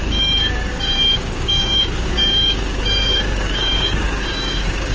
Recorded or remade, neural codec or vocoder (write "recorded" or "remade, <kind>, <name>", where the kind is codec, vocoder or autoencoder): remade, codec, DAC